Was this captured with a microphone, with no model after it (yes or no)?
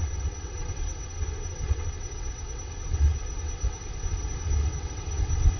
no